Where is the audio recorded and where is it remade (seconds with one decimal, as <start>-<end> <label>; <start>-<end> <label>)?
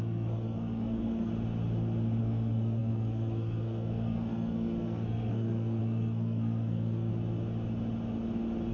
0.0-1.3 remade; 1.3-2.2 recorded; 2.2-7.1 remade; 7.1-8.7 recorded